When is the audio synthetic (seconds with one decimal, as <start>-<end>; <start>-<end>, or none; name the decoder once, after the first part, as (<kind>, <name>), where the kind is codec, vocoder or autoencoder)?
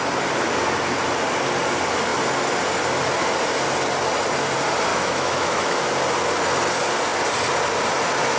4.9-5.8 (autoencoder, DAC-VAE)